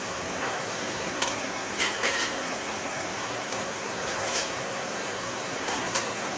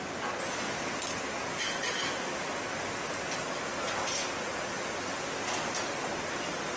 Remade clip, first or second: first